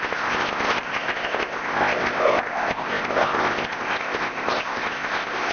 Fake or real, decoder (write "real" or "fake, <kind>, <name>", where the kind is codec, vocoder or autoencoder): fake, codec, ZipCodec